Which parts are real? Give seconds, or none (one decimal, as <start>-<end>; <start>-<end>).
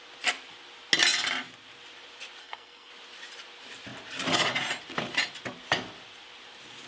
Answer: 0.0-2.4; 2.9-6.9